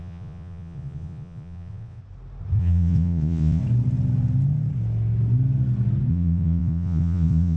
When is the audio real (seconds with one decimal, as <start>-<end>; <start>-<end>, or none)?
2.0-2.6; 3.6-6.1